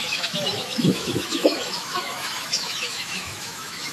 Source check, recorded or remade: remade